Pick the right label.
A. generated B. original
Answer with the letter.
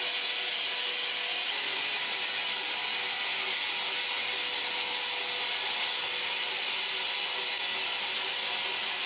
B